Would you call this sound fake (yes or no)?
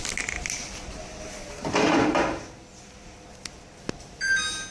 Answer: no